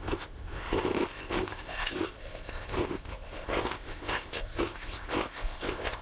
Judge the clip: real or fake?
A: fake